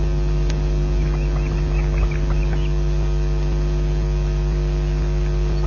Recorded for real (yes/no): yes